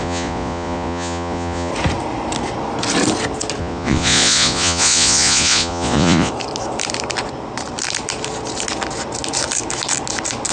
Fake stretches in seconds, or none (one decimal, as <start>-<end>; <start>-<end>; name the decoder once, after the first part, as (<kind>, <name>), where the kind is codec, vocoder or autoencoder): 0.0-1.7 (vocoder, Vocos); 3.6-6.3